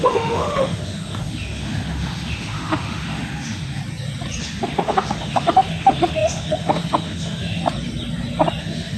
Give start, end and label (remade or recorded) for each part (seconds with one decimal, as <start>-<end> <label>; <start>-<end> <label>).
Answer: 0.0-3.8 remade; 3.8-4.4 recorded; 4.4-7.6 remade; 7.6-8.6 recorded; 8.6-9.0 remade

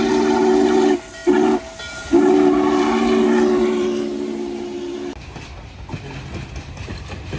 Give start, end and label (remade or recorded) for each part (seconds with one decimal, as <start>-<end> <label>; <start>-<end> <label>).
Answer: 0.0-7.4 recorded

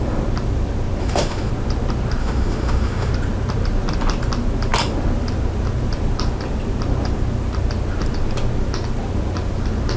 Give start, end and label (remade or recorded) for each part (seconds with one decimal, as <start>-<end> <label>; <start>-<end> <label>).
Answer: 0.0-1.0 recorded; 1.0-1.5 remade; 1.5-2.2 recorded; 2.2-3.1 remade; 3.1-10.0 recorded